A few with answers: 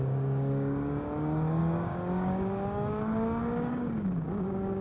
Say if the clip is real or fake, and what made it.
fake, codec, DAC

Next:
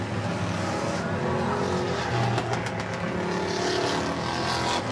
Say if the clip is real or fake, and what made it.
real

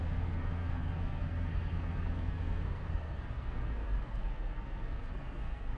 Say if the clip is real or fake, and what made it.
fake, codec, SNAC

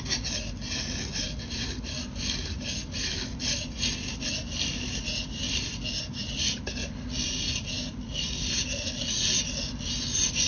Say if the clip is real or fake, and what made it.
real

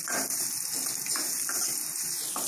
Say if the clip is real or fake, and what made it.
real